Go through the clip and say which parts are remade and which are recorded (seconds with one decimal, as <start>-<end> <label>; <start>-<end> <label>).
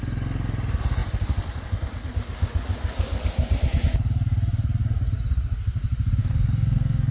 0.0-6.2 recorded; 6.2-7.1 remade